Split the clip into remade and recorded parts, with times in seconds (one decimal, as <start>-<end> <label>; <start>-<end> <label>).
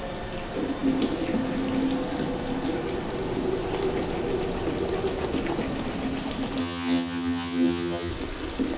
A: 0.0-6.6 recorded; 6.6-8.1 remade; 8.1-8.8 recorded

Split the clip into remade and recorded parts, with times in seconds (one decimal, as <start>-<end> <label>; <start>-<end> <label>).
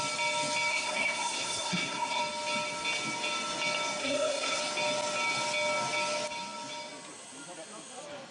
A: 0.0-0.7 recorded; 0.7-2.2 remade; 2.2-4.0 recorded; 4.0-4.6 remade; 4.6-8.3 recorded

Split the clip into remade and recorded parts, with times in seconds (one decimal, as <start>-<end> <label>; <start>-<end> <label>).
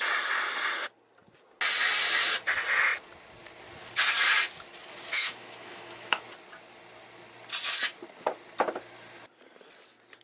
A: 0.0-5.1 recorded; 5.1-6.2 remade; 6.2-10.2 recorded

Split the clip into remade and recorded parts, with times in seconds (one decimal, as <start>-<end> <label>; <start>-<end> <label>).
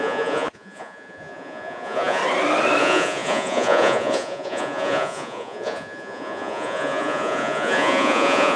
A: 0.0-2.2 remade; 2.2-2.8 recorded; 2.8-8.6 remade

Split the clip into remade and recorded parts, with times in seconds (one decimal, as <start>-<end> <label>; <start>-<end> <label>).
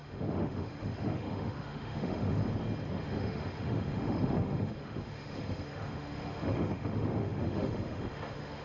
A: 0.0-2.4 remade; 2.4-2.9 recorded; 2.9-8.6 remade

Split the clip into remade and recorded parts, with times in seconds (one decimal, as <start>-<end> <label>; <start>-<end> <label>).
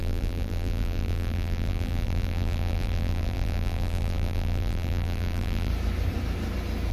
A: 0.0-5.7 remade; 5.7-6.9 recorded